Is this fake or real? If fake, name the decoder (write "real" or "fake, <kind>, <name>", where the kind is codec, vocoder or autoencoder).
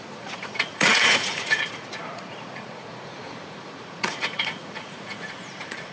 fake, vocoder, Vocos